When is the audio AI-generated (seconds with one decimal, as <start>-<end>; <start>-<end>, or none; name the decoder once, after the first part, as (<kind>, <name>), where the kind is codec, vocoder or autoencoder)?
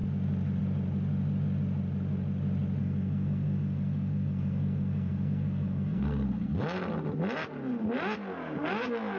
2.8-6.6 (codec, SNAC)